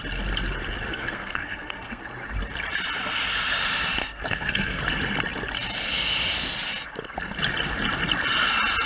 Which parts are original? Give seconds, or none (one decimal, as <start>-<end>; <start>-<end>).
0.0-0.9; 2.0-4.0; 4.8-8.9